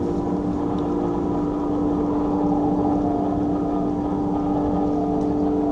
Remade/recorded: recorded